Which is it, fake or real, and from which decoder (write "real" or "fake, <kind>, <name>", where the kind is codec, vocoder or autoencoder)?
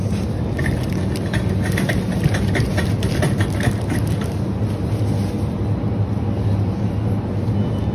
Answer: real